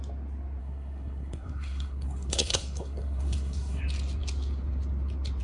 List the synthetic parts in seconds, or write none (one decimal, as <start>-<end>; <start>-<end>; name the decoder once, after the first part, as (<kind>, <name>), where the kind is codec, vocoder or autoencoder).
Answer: 0.6-3.8 (codec, SNAC)